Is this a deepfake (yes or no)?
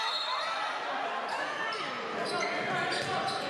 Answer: no